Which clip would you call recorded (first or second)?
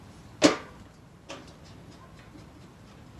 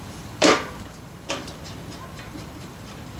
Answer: first